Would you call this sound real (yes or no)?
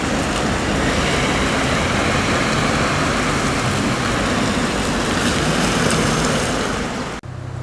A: yes